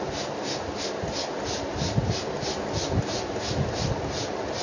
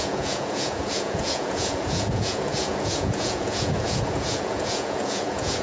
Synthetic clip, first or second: second